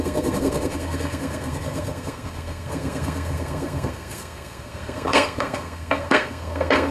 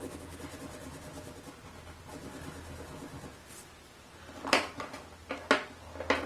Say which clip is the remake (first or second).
first